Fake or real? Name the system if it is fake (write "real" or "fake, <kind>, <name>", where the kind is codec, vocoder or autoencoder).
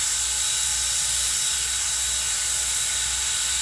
real